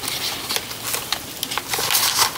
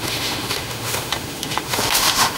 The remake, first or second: second